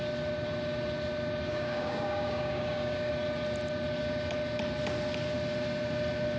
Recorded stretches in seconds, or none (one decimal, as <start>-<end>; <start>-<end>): 0.0-1.5; 3.1-6.4